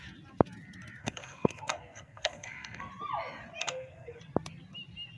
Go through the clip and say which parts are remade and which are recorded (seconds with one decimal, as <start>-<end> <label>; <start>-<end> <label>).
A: 0.0-1.0 recorded; 1.0-2.9 remade; 2.9-3.6 recorded; 3.6-4.2 remade; 4.2-5.2 recorded